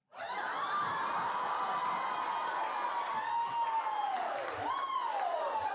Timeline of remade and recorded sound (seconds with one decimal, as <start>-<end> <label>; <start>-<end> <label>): 0.0-5.7 recorded